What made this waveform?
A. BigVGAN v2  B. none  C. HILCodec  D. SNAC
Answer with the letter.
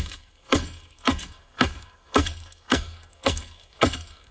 D